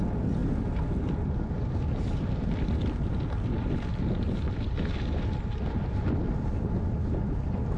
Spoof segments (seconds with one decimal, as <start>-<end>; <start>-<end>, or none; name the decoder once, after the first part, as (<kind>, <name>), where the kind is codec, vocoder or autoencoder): none